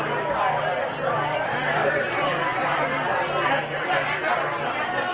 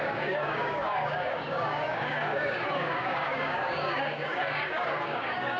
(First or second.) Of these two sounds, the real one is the first